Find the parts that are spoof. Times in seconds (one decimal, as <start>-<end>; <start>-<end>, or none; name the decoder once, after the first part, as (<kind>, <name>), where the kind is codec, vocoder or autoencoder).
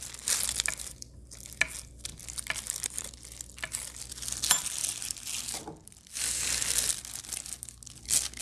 none